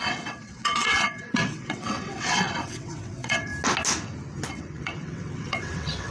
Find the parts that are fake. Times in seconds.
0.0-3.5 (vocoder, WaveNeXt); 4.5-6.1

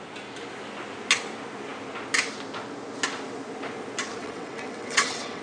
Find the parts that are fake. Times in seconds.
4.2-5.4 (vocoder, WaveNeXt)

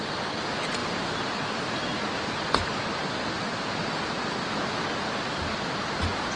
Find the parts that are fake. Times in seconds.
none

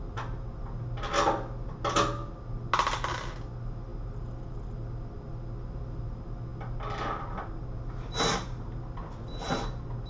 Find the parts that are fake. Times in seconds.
none

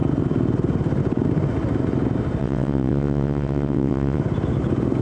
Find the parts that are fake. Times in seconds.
2.4-4.2 (vocoder, WaveNeXt)

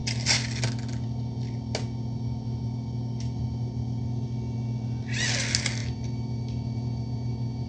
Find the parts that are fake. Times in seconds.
none